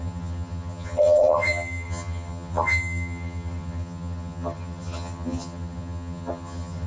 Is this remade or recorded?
remade